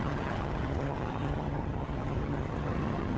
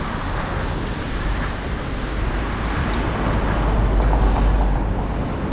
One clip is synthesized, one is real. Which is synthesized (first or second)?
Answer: first